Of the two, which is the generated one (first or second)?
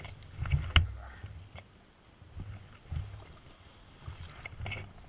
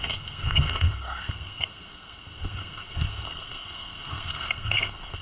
second